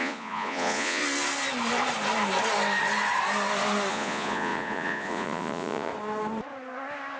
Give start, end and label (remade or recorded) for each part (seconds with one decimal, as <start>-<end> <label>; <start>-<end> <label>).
0.0-1.0 remade; 1.0-3.9 recorded; 3.9-5.9 remade; 5.9-7.2 recorded